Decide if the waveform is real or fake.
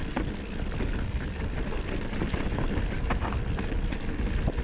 real